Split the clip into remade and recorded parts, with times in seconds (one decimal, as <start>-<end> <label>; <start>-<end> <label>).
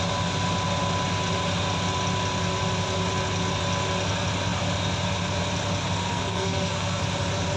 0.0-6.1 recorded; 6.1-7.0 remade; 7.0-7.6 recorded